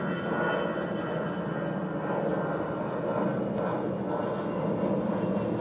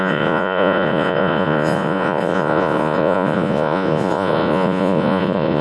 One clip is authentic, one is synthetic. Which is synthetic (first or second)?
second